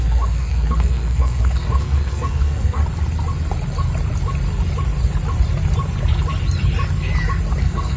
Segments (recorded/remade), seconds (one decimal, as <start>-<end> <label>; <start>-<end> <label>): 0.0-2.8 remade; 2.8-7.6 recorded; 7.6-8.0 remade